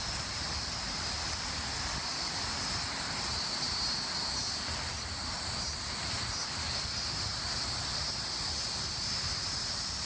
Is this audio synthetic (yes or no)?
no